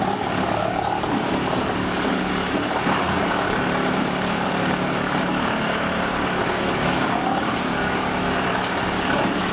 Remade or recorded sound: remade